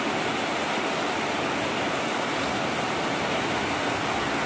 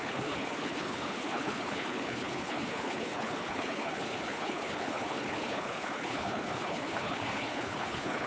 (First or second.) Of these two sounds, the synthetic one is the second